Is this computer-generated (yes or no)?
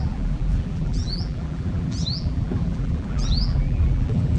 yes